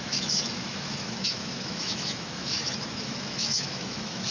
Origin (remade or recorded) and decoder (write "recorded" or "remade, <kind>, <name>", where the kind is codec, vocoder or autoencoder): remade, autoencoder, DAC-VAE